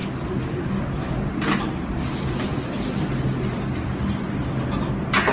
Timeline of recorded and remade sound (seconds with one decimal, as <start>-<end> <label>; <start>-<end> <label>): 0.0-5.3 recorded